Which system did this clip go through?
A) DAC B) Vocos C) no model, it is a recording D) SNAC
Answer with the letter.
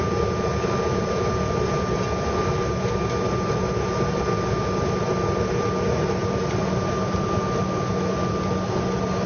C